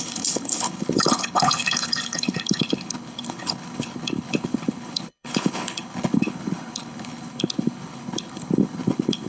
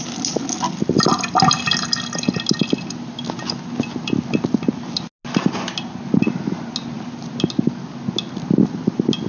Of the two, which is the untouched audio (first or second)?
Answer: second